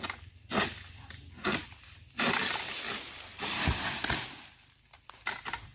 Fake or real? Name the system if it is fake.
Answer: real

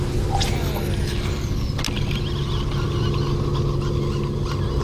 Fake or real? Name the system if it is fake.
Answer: real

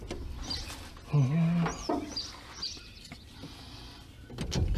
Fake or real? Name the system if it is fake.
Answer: real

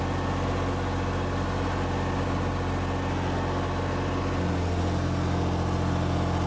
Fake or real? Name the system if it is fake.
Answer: real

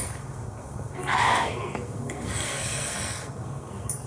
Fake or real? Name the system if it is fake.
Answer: fake, codec, SNAC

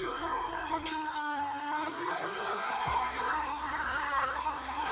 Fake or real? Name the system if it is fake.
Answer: fake, codec, SNAC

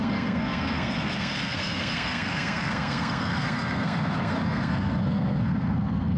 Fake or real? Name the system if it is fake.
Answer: fake, codec, SNAC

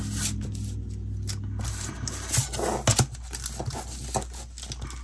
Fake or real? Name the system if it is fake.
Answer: real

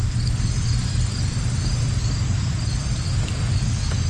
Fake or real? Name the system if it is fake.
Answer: real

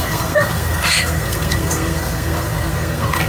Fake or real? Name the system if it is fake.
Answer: fake, codec, SNAC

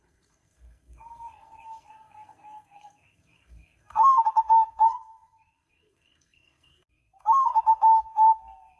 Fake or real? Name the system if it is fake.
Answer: fake, codec, SNAC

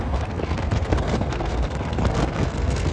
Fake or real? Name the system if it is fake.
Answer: fake, codec, SNAC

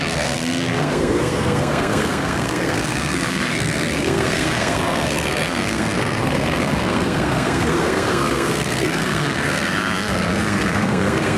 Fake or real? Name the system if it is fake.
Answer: fake, codec, SNAC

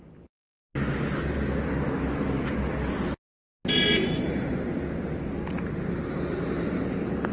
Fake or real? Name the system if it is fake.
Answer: real